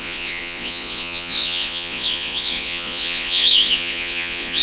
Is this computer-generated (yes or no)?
yes